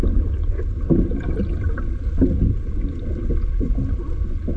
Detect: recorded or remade recorded